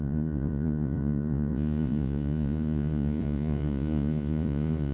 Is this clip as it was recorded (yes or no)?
no